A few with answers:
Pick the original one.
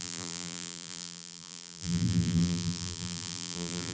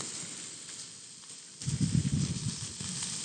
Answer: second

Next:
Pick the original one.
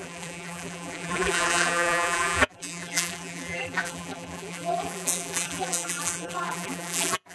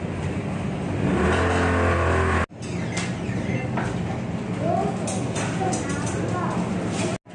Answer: second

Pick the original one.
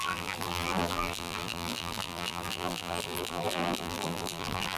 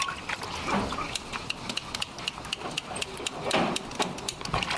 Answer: second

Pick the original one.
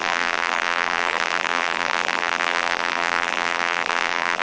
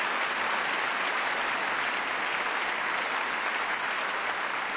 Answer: second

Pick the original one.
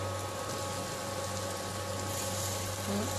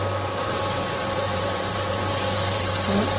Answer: first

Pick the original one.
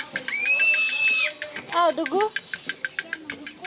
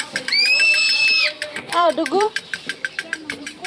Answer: first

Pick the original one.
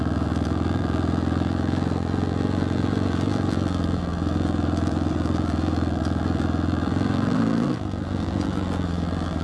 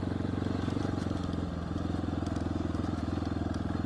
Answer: second